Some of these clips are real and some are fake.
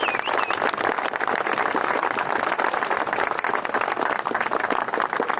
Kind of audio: real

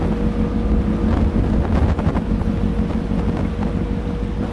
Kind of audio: real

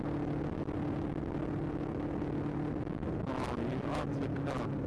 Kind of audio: real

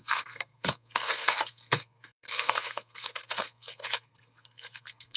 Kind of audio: fake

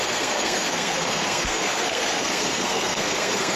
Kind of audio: fake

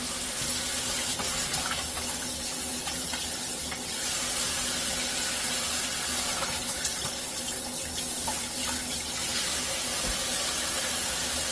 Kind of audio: real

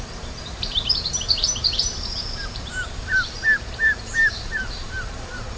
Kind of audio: fake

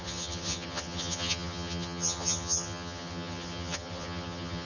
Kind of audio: fake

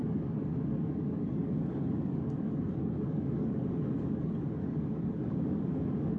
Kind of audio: fake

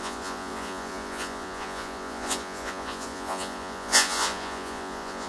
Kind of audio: fake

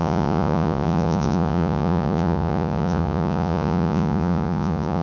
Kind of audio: fake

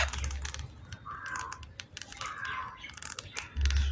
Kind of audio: real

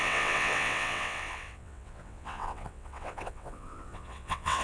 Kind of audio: fake